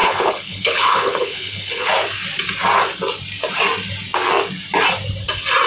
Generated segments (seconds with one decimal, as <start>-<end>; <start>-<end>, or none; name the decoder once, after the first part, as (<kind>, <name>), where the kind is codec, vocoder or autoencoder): 0.0-1.9 (codec, HILCodec)